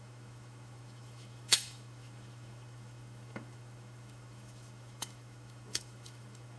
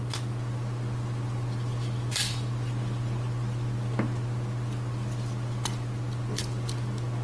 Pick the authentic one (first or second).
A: second